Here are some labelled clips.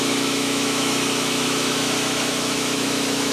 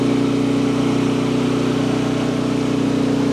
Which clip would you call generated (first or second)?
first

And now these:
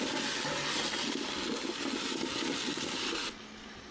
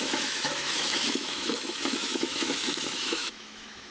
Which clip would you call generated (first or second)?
second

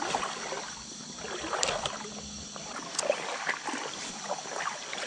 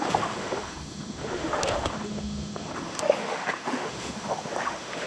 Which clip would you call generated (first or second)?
second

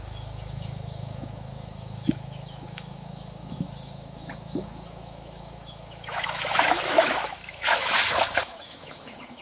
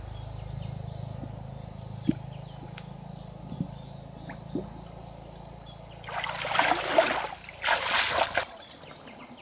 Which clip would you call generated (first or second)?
first